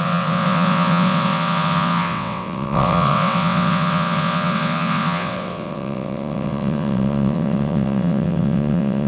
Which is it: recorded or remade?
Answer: remade